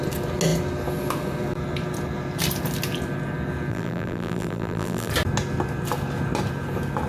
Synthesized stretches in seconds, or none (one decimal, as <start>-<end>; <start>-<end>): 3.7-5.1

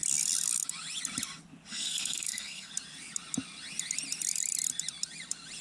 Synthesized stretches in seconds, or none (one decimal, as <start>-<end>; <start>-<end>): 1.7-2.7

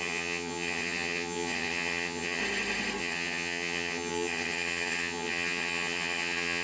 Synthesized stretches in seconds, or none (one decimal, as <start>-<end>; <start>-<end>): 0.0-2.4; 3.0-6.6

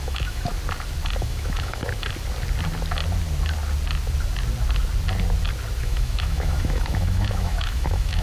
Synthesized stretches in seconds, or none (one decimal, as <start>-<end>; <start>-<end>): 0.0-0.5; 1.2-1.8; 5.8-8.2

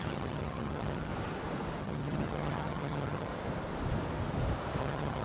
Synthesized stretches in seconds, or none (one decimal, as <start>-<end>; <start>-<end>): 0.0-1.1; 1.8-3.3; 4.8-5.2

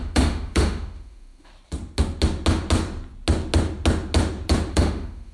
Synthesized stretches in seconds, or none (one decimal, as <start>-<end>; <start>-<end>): 0.0-1.5; 4.7-5.3

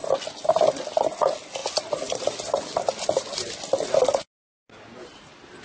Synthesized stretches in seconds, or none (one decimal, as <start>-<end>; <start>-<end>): none